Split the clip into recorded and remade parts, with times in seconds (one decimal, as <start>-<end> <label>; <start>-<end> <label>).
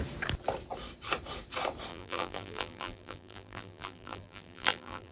0.0-1.9 recorded; 1.9-5.1 remade